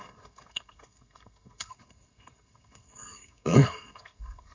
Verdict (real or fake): fake